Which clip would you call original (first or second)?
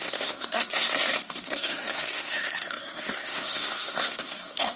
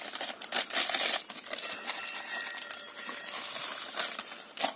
second